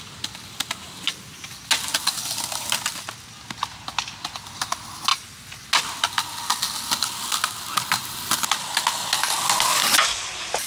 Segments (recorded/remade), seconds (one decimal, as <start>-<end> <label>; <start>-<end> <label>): 0.0-10.7 recorded